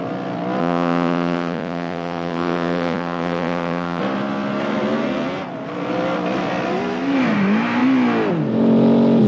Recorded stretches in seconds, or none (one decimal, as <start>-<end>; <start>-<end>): 0.0-0.6; 4.0-9.3